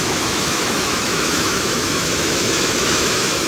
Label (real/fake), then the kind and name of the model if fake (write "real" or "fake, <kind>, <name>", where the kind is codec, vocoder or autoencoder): fake, autoencoder, DAC-VAE